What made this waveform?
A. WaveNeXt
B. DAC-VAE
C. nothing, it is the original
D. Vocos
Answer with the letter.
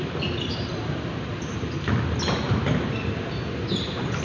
C